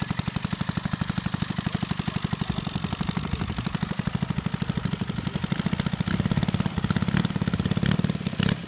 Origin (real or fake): real